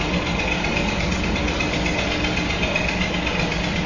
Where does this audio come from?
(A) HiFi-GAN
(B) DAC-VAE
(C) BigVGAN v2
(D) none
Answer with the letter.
D